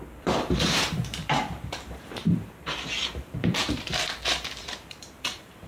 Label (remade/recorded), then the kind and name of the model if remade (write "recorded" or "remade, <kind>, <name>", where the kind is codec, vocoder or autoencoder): remade, vocoder, BigVGAN v2